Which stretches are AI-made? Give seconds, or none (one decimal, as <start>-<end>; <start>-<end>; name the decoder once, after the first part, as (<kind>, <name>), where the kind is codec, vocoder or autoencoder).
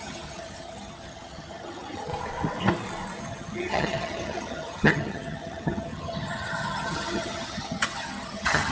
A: 0.0-2.1 (vocoder, HiFi-GAN); 3.2-8.7